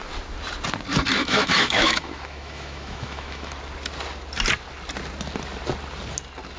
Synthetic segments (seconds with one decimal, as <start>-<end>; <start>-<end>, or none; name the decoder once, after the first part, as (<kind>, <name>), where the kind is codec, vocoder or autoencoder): 1.2-3.5 (autoencoder, DAC-VAE)

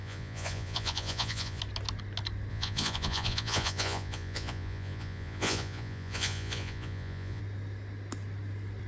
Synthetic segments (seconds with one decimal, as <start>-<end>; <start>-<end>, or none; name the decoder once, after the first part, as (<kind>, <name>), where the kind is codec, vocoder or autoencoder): 0.0-1.6 (vocoder, Vocos); 2.5-7.4

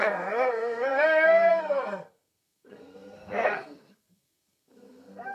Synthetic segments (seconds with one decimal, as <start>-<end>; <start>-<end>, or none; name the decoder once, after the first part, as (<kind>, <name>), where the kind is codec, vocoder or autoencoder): 0.0-5.3 (codec, SNAC)

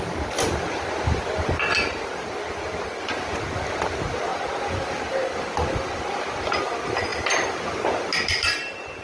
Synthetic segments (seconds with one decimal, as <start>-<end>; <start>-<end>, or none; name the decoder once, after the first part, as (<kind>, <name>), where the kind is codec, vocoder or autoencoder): none